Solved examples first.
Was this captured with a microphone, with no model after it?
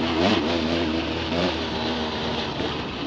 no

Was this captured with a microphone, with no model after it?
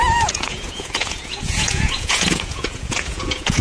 no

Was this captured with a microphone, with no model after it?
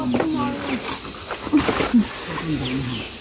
yes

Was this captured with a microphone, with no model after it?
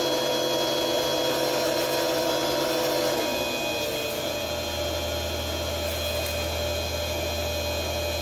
yes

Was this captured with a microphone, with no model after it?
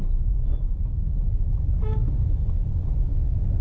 yes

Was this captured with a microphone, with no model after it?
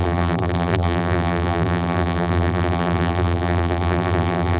no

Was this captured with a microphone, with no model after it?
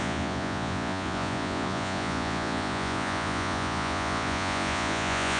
no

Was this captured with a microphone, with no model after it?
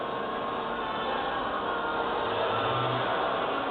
yes